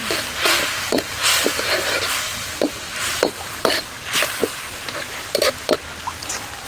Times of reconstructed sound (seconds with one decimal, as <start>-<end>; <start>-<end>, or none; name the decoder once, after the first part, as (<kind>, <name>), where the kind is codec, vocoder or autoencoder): 2.3-3.2 (vocoder, BigVGAN v2)